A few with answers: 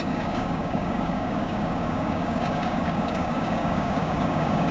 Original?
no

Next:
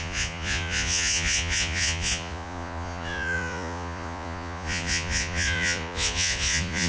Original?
no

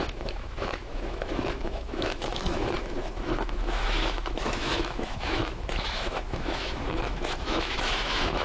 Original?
no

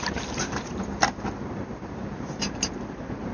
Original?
no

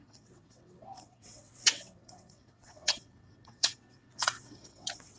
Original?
no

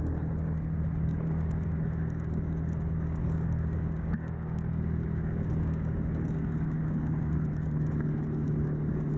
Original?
no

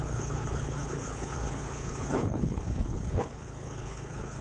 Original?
no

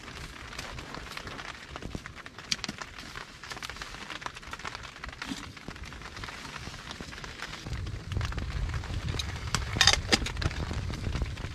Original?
yes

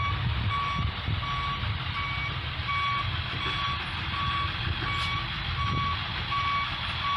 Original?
yes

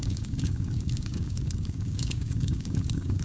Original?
no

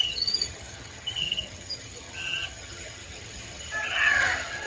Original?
no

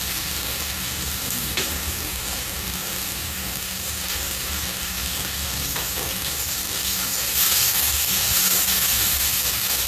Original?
no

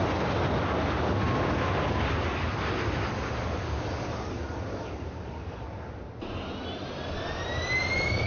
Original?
yes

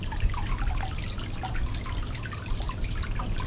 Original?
yes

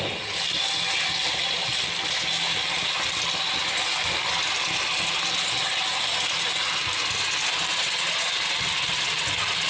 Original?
yes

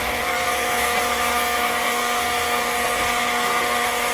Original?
no